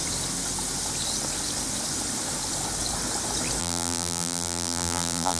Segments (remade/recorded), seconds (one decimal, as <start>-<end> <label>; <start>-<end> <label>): 0.0-3.6 recorded; 3.6-5.4 remade